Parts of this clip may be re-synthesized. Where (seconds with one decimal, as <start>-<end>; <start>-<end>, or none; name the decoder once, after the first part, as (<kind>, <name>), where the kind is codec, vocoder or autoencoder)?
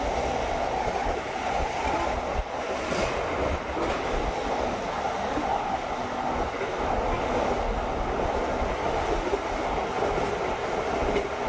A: none